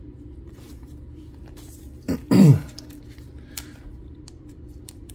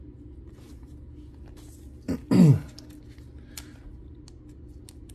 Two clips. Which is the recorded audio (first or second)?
second